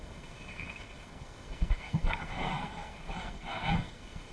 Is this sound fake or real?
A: fake